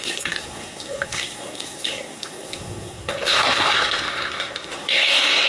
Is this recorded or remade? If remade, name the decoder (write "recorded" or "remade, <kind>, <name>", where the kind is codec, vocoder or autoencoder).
remade, codec, SNAC